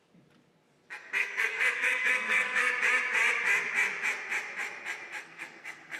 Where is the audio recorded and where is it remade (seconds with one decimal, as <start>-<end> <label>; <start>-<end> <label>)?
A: 0.0-1.2 recorded; 1.2-2.7 remade; 2.7-5.2 recorded; 5.2-6.0 remade